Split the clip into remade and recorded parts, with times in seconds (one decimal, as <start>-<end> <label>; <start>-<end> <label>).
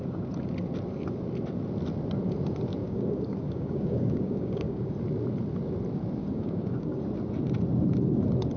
0.0-2.8 recorded; 2.8-4.9 remade; 4.9-6.2 recorded; 6.2-7.0 remade; 7.0-8.6 recorded